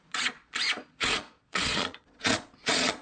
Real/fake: fake